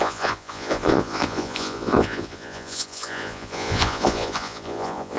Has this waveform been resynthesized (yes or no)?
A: yes